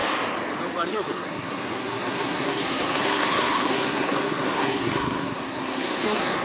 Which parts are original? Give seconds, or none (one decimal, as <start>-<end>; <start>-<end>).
0.0-0.9